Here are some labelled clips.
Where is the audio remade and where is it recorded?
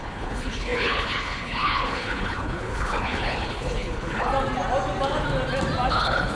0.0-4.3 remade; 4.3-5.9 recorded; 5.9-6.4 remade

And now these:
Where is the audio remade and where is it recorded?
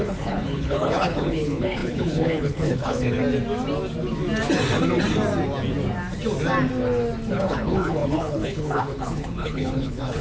0.0-3.2 remade; 3.2-7.3 recorded; 7.3-10.2 remade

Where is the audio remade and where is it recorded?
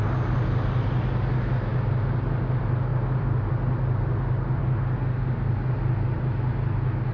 0.0-7.1 recorded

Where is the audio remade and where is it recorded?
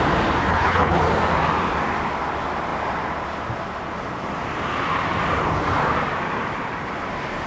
0.0-0.5 recorded; 0.5-1.0 remade; 1.0-7.5 recorded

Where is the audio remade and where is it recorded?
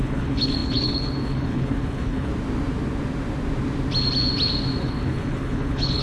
0.0-2.3 remade; 2.3-4.8 recorded; 4.8-6.0 remade